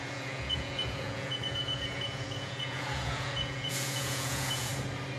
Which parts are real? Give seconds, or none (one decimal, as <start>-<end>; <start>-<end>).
4.7-5.2